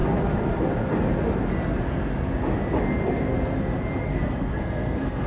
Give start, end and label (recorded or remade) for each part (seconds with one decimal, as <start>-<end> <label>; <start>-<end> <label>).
0.0-4.0 recorded; 4.0-5.3 remade